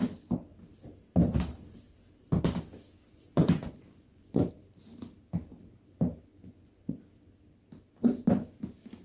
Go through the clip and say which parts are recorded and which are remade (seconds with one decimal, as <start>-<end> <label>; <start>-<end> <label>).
0.0-3.0 recorded; 3.0-4.5 remade; 4.5-6.3 recorded; 6.3-7.0 remade; 7.0-9.0 recorded